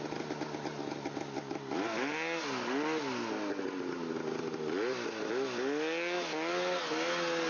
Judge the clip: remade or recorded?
recorded